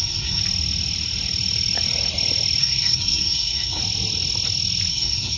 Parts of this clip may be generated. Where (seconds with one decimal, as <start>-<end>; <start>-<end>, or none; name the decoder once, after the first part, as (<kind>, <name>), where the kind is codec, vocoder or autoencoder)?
0.0-0.4 (codec, SNAC); 2.6-3.8; 4.9-5.4